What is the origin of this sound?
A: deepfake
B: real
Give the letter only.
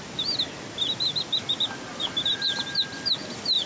B